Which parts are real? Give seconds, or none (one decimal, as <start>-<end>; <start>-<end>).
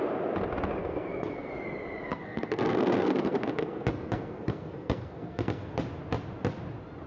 0.0-0.8; 1.5-2.1; 5.8-7.1